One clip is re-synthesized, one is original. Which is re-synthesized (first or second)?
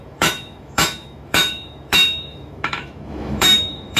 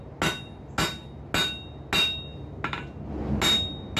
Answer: first